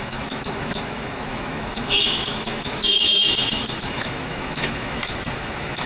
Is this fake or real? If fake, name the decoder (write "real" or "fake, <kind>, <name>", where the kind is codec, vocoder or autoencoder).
fake, autoencoder, DAC-VAE